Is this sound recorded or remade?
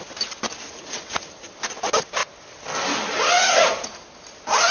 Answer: recorded